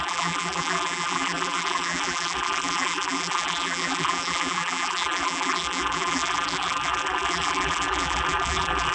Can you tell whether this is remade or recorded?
remade